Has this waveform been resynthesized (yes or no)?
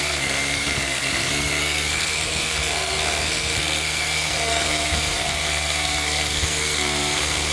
yes